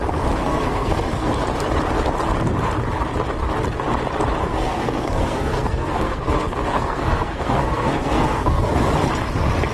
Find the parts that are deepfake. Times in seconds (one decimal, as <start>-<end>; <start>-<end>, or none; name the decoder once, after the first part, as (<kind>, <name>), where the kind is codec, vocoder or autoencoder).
0.4-1.4 (codec, SNAC); 4.4-8.8